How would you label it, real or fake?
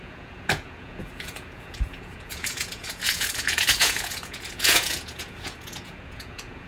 fake